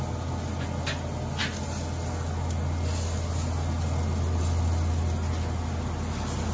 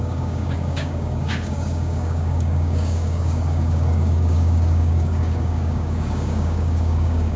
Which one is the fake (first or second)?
second